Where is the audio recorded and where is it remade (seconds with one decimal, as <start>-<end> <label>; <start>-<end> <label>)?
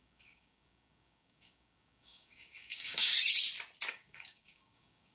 0.0-3.1 remade; 3.1-3.9 recorded; 3.9-5.1 remade